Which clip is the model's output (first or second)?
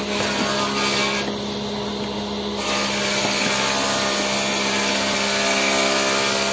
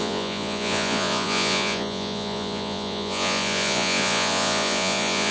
second